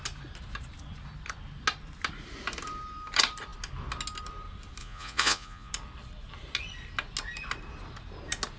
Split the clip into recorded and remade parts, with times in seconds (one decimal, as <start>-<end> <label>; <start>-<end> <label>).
0.0-4.8 recorded; 4.8-5.7 remade; 5.7-8.6 recorded